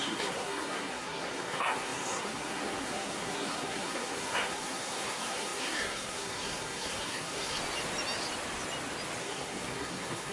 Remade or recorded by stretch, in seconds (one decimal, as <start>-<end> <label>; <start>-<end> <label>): 0.0-7.6 remade; 7.6-9.2 recorded; 9.2-10.3 remade